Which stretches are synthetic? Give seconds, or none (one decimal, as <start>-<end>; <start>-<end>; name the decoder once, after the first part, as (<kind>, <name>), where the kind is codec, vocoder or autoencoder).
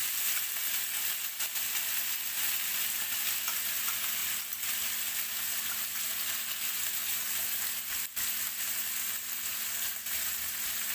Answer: none